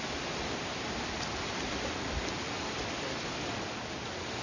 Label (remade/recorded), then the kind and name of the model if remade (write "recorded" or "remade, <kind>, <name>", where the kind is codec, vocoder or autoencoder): recorded